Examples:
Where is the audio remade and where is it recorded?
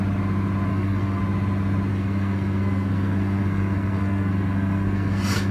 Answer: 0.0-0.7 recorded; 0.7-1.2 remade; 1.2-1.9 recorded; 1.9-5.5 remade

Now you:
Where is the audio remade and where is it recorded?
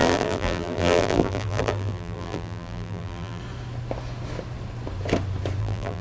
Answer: 0.0-3.4 remade; 3.4-5.6 recorded; 5.6-6.0 remade